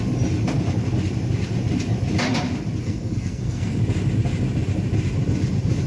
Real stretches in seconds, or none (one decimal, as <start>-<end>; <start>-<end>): 0.0-2.8; 3.8-5.9